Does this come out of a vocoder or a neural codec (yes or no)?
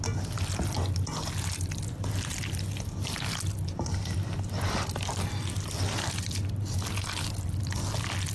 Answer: no